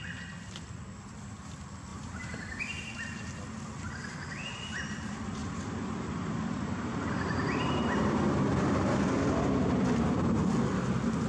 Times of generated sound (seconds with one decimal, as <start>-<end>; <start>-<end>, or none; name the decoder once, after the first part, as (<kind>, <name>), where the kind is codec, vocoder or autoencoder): 1.9-2.6 (vocoder, BigVGAN v2); 5.4-8.2